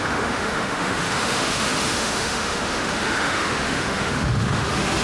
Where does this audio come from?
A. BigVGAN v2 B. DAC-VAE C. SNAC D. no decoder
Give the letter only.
B